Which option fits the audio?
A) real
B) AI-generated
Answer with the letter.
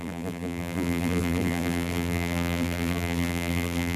B